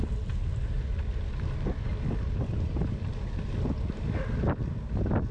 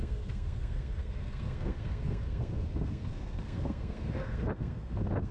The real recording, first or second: first